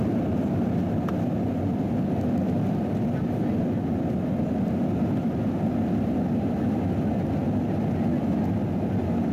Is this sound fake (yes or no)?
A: no